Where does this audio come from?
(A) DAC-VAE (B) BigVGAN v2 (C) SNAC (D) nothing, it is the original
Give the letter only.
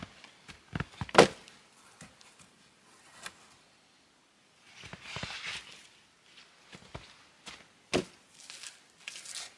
D